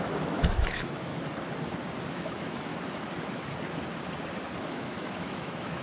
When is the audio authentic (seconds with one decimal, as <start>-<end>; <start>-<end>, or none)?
1.1-2.1; 2.7-4.6